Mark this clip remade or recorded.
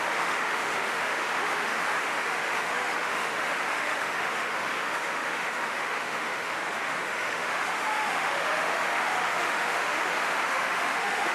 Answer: remade